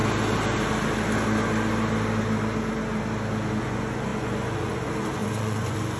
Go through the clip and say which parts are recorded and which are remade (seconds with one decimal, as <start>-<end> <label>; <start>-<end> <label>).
0.0-3.6 recorded; 3.6-6.0 remade